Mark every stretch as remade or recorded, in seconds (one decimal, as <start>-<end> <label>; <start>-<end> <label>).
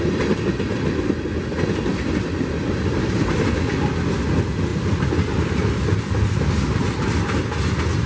0.0-4.7 recorded; 4.7-7.4 remade; 7.4-8.1 recorded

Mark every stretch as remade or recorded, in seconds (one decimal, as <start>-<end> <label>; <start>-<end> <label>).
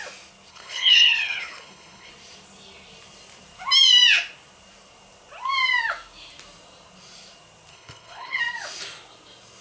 0.0-0.5 recorded; 0.5-2.1 remade; 2.1-7.7 recorded; 7.7-8.4 remade; 8.4-9.6 recorded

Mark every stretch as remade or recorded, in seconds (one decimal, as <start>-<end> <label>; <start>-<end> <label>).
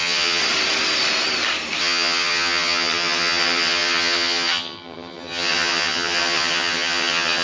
0.0-0.4 remade; 0.4-1.8 recorded; 1.8-7.4 remade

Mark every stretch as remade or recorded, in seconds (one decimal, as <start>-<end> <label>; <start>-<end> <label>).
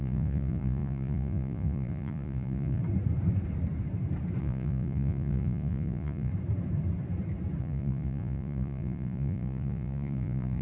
0.0-2.8 remade; 2.8-4.4 recorded; 4.4-6.3 remade; 6.3-7.6 recorded; 7.6-10.6 remade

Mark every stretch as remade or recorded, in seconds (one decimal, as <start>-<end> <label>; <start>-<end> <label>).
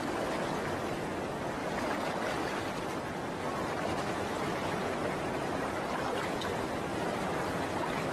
0.0-8.1 recorded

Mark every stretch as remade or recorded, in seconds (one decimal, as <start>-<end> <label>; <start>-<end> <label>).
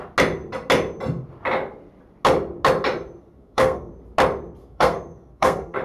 0.0-3.2 recorded; 3.2-3.9 remade; 3.9-4.6 recorded; 4.6-5.8 remade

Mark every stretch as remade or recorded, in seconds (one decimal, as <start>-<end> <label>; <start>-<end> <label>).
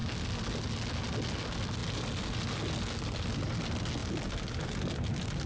0.0-5.5 recorded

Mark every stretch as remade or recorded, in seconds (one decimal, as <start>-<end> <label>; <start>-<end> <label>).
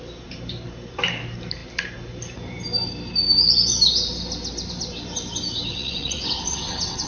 0.0-5.7 recorded; 5.7-7.1 remade